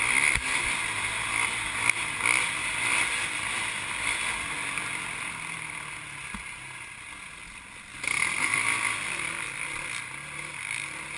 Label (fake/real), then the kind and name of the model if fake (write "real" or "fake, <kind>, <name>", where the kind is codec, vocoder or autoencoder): real